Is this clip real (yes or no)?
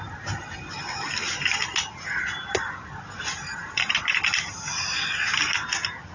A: yes